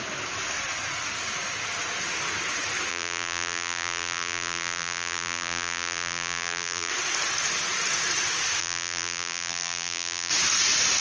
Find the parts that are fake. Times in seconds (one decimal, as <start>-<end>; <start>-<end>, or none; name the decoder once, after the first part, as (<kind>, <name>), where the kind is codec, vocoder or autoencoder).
2.9-6.9 (vocoder, BigVGAN v2); 8.6-10.3